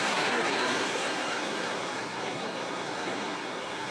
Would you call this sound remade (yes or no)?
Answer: yes